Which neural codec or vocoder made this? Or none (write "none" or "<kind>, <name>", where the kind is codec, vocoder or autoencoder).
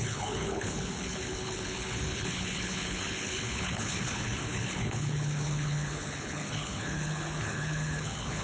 codec, HILCodec